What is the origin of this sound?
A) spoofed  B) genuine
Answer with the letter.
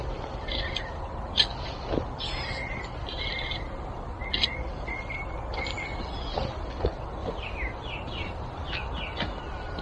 B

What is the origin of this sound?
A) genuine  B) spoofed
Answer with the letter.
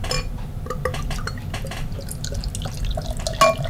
A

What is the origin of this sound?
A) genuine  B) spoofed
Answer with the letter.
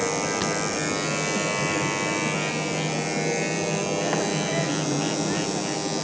A